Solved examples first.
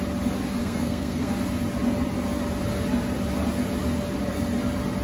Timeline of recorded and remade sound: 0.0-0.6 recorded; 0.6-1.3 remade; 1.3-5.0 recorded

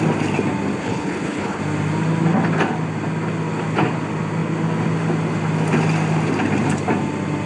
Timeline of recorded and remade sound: 0.0-0.8 recorded; 0.8-1.6 remade; 1.6-7.5 recorded

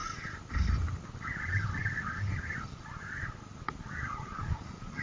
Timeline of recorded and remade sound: 0.0-5.0 recorded

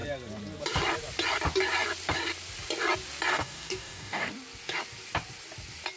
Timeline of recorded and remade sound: 0.0-3.3 recorded; 3.3-4.3 remade; 4.3-6.0 recorded

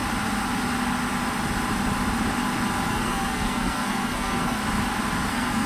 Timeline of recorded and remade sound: 0.0-2.9 recorded; 2.9-4.6 remade; 4.6-5.3 recorded; 5.3-5.7 remade

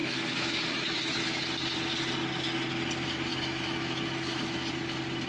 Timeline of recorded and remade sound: 0.0-1.4 remade; 1.4-3.3 recorded; 3.3-4.7 remade; 4.7-5.3 recorded